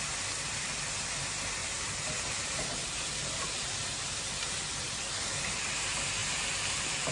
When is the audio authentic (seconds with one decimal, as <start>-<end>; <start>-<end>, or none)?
0.0-1.6; 4.9-6.2